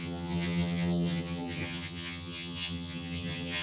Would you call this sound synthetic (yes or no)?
yes